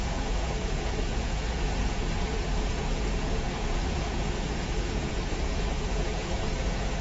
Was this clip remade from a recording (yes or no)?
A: yes